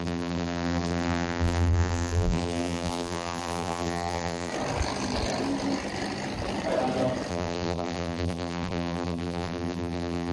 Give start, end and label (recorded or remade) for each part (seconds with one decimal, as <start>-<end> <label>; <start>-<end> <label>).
0.0-4.5 remade; 4.5-7.3 recorded; 7.3-10.3 remade